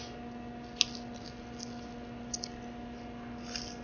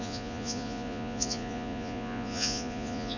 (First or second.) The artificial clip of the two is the second